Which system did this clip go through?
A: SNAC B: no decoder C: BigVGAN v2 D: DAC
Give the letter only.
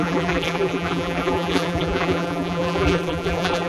C